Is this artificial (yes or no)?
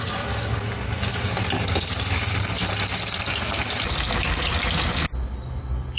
no